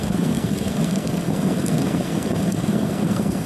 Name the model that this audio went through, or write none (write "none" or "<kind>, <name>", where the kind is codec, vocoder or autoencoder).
codec, SNAC